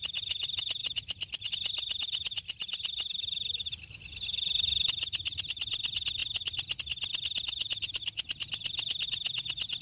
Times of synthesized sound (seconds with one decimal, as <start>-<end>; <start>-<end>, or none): none